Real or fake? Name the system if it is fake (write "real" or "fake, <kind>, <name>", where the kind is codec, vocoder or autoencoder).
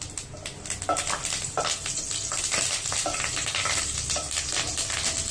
real